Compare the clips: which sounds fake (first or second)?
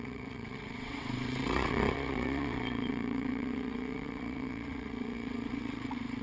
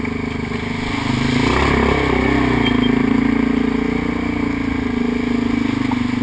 first